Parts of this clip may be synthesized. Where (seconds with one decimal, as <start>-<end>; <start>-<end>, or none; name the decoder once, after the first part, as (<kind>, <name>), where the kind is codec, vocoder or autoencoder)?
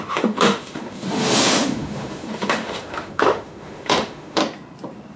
0.0-4.4 (autoencoder, DAC-VAE)